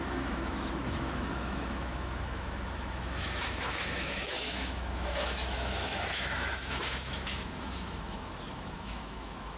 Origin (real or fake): fake